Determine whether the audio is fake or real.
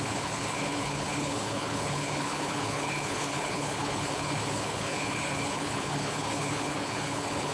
fake